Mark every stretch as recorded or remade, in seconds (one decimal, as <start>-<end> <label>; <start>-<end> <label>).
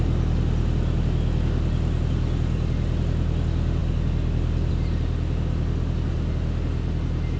0.0-7.4 recorded